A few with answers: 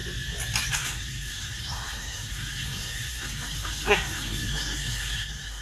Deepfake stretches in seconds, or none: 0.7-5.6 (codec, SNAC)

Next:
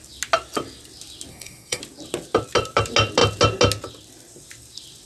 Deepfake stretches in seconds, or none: 1.3-1.8 (codec, SNAC)

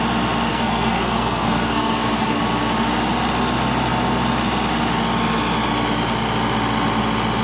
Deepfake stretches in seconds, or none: 0.5-2.4 (codec, SNAC)

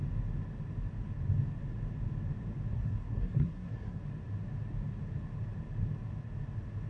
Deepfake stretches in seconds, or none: 2.7-4.0 (codec, SNAC)